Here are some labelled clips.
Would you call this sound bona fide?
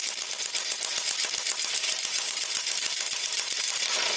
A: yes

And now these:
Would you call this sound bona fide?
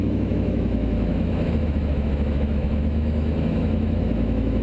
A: no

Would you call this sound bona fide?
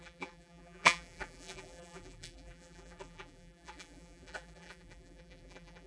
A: no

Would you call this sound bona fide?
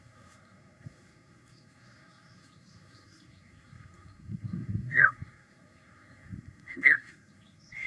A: no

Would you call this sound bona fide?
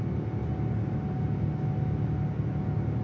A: yes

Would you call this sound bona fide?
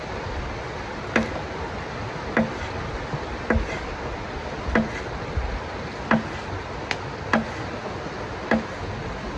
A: yes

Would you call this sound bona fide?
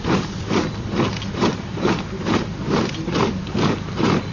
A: yes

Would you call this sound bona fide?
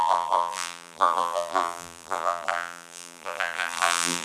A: no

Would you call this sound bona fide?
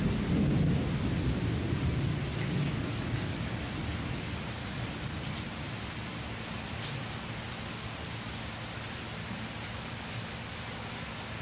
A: yes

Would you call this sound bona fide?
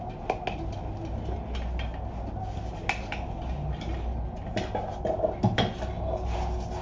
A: yes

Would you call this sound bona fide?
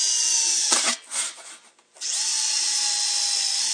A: yes